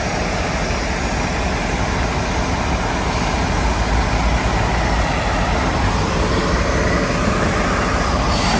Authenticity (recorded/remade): recorded